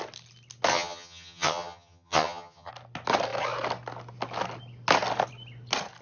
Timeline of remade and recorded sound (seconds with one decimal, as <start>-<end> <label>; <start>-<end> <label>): 0.0-0.7 recorded; 0.7-2.7 remade; 2.7-6.0 recorded